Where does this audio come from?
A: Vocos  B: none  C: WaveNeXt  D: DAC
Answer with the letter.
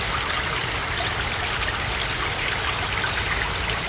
B